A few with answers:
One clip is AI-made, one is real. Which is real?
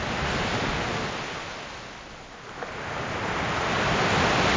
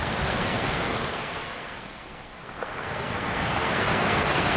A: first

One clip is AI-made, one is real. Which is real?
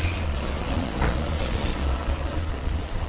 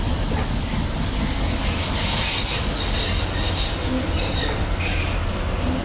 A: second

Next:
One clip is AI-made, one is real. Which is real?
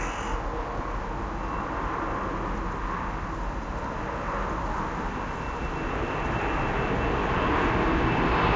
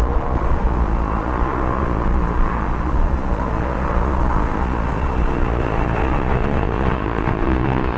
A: first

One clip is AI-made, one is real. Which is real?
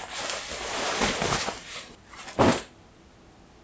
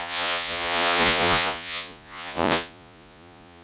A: first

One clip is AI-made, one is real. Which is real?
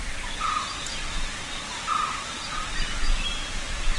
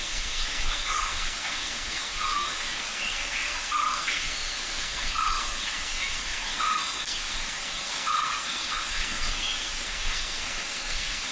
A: first